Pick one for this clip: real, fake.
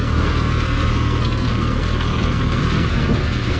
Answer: fake